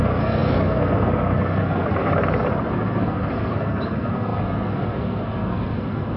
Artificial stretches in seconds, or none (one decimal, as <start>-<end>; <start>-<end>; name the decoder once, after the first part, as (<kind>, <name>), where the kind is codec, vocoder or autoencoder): 0.0-2.1 (codec, SNAC); 2.7-6.2